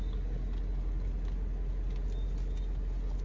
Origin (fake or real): real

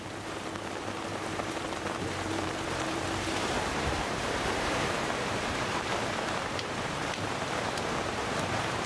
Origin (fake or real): fake